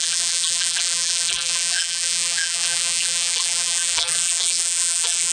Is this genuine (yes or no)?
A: no